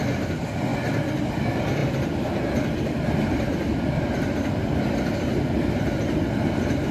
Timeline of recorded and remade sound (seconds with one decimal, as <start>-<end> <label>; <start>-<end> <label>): 0.0-6.9 recorded